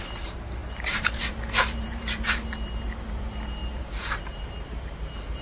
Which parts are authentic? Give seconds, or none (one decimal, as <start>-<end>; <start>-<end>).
none